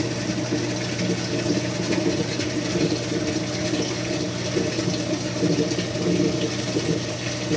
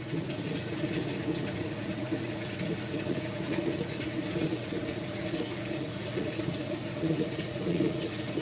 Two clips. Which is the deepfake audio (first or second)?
second